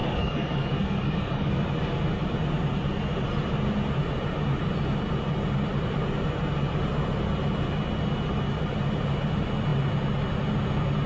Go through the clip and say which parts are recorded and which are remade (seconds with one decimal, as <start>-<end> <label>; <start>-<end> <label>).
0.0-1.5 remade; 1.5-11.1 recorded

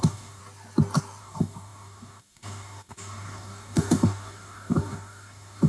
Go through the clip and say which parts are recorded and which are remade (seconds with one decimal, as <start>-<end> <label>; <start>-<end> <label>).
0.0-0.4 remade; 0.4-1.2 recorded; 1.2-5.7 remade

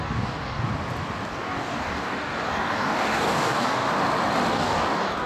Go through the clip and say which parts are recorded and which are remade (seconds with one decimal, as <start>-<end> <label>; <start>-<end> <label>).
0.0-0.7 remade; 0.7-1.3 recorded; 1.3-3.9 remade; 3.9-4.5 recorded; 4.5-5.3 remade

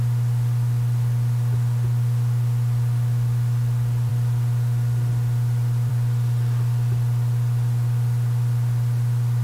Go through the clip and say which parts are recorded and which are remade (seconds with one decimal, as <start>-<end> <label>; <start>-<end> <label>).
0.0-9.4 recorded